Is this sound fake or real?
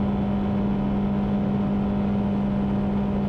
real